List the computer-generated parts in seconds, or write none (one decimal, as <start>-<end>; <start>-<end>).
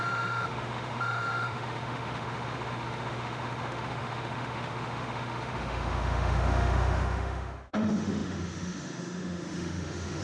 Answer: 0.0-10.2